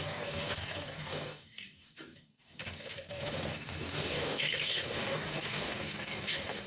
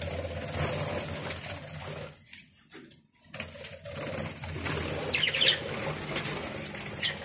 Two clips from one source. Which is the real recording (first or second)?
second